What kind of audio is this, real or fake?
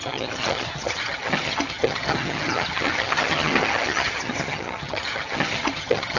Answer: fake